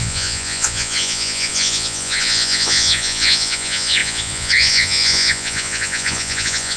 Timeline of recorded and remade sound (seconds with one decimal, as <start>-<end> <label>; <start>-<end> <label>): 0.0-6.8 remade